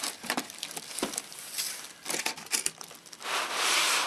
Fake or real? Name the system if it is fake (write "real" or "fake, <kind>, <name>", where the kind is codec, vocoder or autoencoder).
real